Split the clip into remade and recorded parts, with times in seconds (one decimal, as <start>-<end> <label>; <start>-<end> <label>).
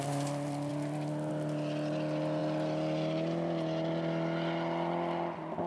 0.0-5.7 recorded